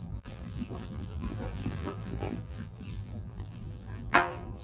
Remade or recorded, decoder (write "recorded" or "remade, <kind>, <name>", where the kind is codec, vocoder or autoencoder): remade, vocoder, BigVGAN v2